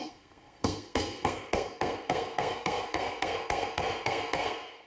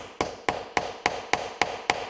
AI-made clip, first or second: first